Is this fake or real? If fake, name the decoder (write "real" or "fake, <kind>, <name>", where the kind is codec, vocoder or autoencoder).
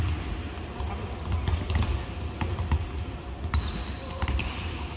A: real